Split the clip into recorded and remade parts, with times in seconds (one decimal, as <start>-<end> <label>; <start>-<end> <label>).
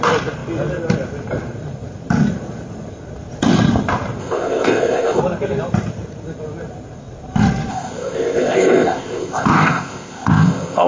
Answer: 0.0-4.2 recorded; 4.2-5.2 remade; 5.2-7.7 recorded; 7.7-10.9 remade